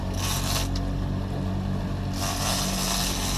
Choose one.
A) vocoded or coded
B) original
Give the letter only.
B